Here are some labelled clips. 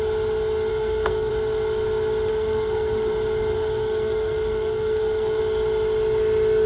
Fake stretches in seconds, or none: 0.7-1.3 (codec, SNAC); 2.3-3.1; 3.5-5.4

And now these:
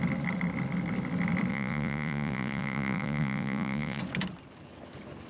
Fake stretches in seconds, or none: 1.5-4.0 (vocoder, Vocos)

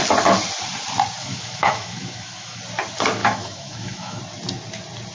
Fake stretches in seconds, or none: 1.2-2.6 (autoencoder, DAC-VAE); 3.2-4.2

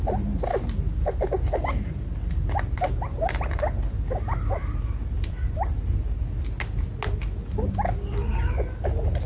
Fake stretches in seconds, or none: 4.6-6.2 (vocoder, BigVGAN v2)

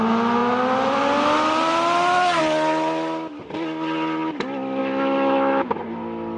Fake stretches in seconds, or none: 4.8-5.8 (autoencoder, DAC-VAE)

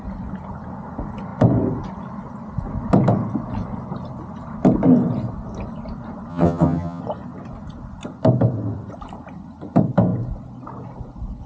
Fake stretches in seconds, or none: 6.3-7.0 (vocoder, HiFi-GAN)

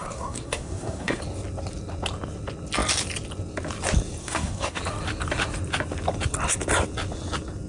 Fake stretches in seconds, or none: 0.0-1.2 (codec, SNAC); 4.2-4.8

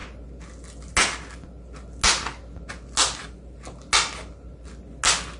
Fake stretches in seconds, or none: none